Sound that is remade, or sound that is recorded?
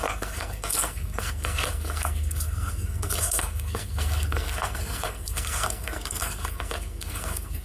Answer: remade